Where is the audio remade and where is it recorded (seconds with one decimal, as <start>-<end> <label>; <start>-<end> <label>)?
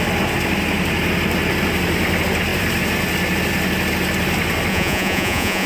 0.0-4.7 recorded; 4.7-5.7 remade